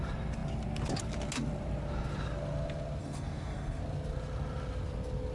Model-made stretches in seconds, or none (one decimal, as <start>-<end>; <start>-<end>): 3.0-3.8